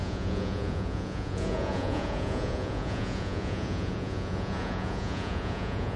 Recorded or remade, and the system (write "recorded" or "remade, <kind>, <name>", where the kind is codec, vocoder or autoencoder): remade, vocoder, Vocos